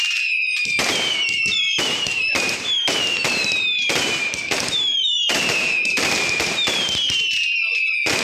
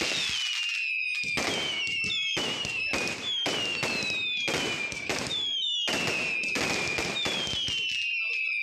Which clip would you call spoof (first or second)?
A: first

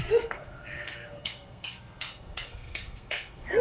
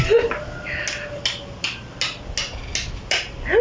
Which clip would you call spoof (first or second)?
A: first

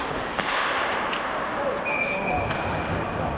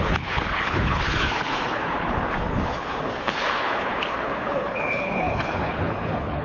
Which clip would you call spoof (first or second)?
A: second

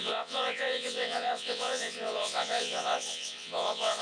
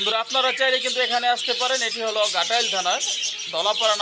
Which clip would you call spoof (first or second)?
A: first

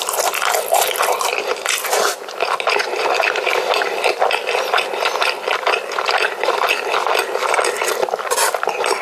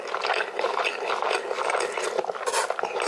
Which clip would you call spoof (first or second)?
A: first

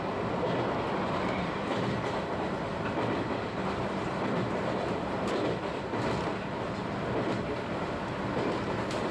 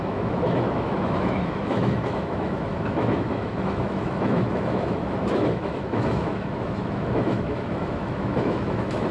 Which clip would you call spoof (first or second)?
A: second